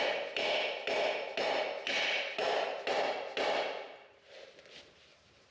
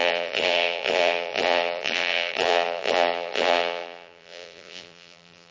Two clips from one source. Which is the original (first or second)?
first